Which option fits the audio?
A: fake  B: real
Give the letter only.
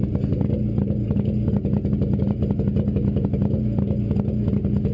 B